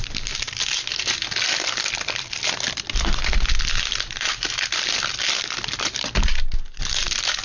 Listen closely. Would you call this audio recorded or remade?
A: recorded